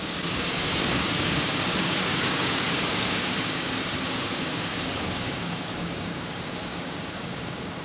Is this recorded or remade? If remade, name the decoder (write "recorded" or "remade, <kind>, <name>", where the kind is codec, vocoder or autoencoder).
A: remade, codec, DAC